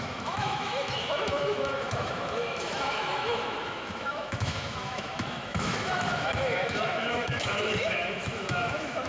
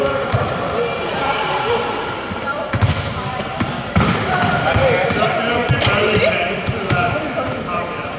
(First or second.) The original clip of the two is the second